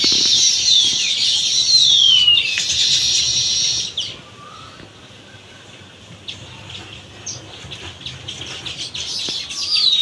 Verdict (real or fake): real